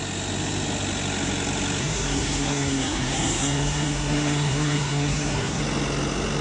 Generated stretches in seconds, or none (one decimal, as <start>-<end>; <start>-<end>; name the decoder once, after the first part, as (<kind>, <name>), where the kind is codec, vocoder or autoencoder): 1.8-5.6 (codec, SNAC)